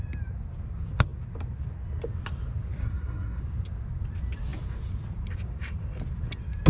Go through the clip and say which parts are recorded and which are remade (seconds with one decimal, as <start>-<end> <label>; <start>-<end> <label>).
0.0-2.8 recorded; 2.8-3.4 remade; 3.4-6.7 recorded